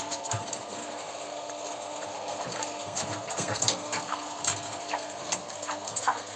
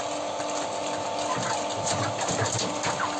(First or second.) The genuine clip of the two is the second